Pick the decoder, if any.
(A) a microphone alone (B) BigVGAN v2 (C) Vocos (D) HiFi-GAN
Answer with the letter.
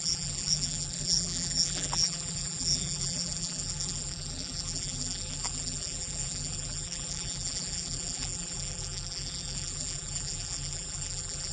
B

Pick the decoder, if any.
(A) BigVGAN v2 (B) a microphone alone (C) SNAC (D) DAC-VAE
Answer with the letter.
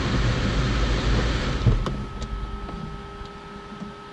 B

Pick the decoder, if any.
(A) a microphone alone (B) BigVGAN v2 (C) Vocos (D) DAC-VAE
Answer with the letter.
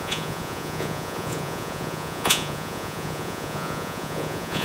C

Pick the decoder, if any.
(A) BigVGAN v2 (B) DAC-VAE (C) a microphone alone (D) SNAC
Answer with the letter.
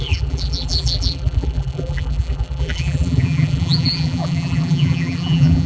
A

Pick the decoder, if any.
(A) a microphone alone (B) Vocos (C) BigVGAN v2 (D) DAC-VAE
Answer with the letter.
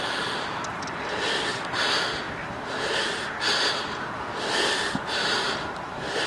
A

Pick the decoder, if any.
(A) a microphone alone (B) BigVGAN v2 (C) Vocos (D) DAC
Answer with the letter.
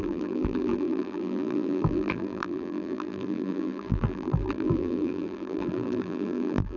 B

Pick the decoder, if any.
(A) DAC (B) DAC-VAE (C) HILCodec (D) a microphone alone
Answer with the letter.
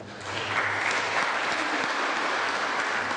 D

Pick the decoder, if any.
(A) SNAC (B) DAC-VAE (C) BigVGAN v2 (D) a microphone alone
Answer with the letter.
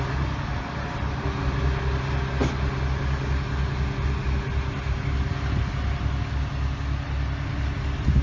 D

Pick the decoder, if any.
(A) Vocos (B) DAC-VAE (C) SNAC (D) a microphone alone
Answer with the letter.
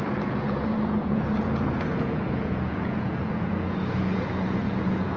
A